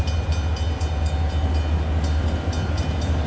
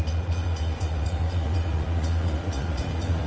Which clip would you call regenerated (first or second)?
second